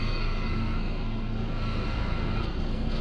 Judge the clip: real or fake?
fake